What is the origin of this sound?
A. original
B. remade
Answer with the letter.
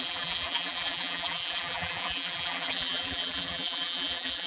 B